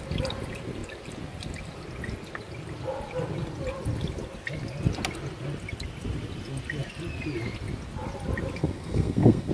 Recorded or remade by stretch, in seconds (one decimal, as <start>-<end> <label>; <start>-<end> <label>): 0.0-8.6 recorded; 8.6-9.5 remade